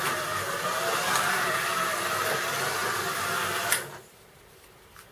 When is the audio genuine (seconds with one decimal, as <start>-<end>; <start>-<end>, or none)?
0.0-5.1